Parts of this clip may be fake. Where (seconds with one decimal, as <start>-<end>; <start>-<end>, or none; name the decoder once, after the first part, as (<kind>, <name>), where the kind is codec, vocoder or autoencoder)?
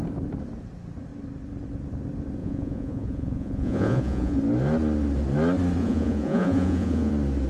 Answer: 2.4-4.4 (vocoder, Vocos); 5.8-7.1